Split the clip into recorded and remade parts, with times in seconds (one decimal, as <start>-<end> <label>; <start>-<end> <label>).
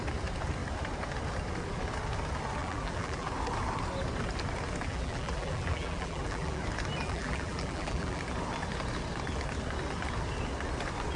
0.0-2.6 recorded; 2.6-3.3 remade; 3.3-4.9 recorded; 4.9-6.6 remade; 6.6-7.0 recorded; 7.0-8.2 remade; 8.2-11.2 recorded